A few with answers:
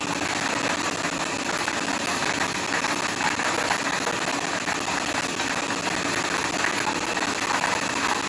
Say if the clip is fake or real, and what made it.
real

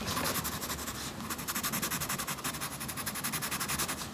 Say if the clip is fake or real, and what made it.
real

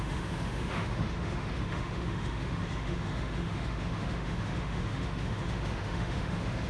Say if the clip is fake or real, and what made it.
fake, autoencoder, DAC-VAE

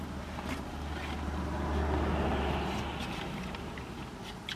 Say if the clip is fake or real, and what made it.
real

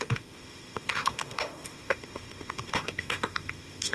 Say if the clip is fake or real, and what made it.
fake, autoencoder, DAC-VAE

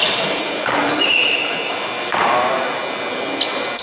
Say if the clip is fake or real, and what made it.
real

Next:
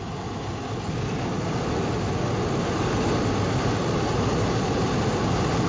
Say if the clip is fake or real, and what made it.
real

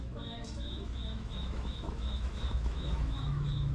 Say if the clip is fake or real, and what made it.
fake, autoencoder, DAC-VAE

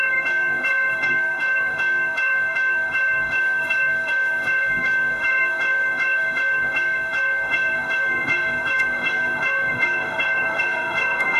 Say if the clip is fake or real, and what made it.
fake, autoencoder, DAC-VAE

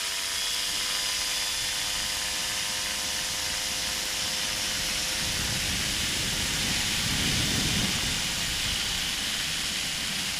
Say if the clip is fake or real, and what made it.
real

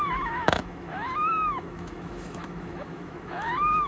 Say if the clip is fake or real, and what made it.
fake, autoencoder, DAC-VAE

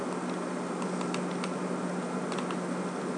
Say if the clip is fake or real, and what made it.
real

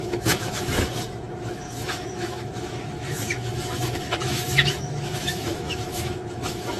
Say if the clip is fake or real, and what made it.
fake, autoencoder, DAC-VAE